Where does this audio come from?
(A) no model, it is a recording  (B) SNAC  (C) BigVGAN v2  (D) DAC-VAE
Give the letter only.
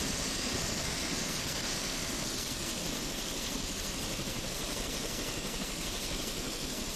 B